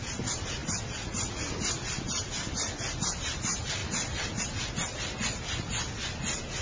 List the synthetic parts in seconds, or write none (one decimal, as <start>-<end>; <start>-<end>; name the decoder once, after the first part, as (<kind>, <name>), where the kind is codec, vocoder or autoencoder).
none